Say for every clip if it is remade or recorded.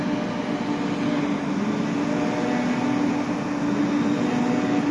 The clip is recorded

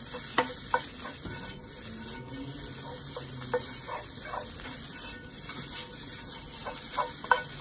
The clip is recorded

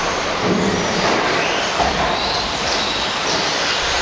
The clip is remade